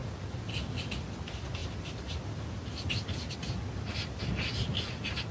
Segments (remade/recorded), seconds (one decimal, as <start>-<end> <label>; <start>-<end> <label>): 0.0-5.3 recorded